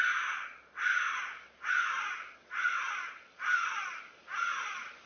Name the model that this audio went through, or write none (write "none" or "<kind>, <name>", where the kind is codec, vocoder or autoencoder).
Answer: none